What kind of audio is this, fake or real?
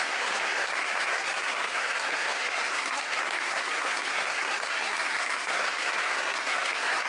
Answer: fake